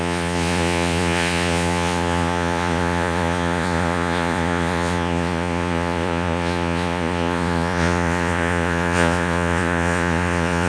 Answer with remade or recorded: remade